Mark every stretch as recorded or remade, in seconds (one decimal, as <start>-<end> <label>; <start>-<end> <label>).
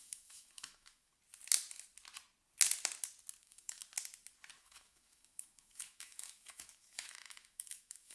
0.0-1.1 remade; 1.1-3.4 recorded; 3.4-3.8 remade; 3.8-4.6 recorded; 4.6-8.1 remade